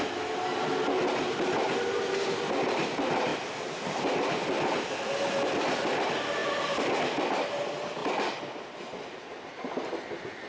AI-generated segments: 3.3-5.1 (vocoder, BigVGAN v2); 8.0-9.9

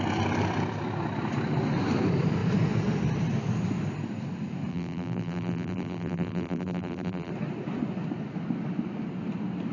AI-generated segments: 4.7-7.3 (vocoder, BigVGAN v2)

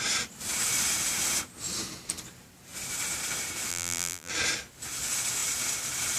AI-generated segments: 3.7-4.3 (vocoder, BigVGAN v2)

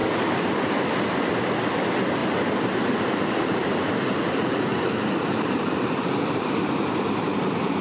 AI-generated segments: 2.2-3.9 (vocoder, BigVGAN v2); 4.7-6.8